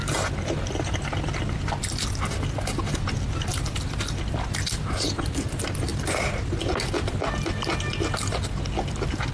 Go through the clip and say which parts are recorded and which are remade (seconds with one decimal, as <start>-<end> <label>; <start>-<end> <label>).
0.0-9.3 recorded